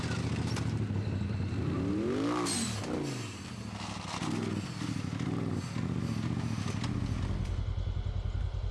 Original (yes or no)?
yes